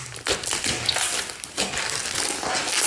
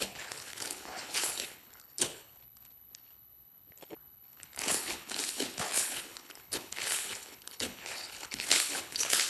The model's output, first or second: second